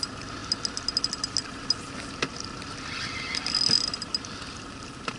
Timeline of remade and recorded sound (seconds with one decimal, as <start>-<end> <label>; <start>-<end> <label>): 0.0-5.2 recorded